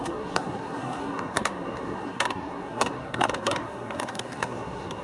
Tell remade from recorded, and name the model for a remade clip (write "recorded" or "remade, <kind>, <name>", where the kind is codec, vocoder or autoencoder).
remade, codec, SNAC